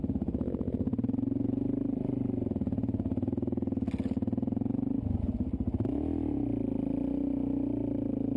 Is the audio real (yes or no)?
yes